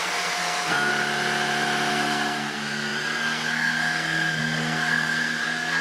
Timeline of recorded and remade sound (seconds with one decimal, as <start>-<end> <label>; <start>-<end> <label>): 0.0-0.9 remade; 0.9-1.9 recorded; 1.9-5.8 remade